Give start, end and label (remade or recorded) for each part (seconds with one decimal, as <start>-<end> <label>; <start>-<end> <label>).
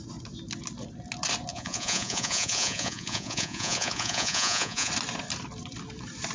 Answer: 0.0-1.5 recorded; 1.5-4.9 remade; 4.9-6.3 recorded